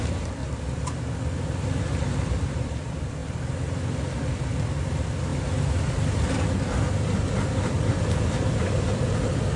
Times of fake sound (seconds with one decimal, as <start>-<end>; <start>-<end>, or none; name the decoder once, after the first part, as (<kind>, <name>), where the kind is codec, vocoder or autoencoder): 0.0-0.4 (vocoder, BigVGAN v2); 1.8-3.2; 4.2-5.3; 5.9-9.6